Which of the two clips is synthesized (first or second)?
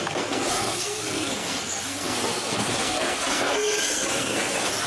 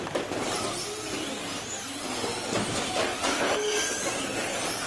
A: first